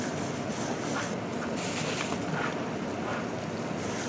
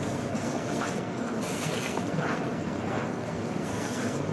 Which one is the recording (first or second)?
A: first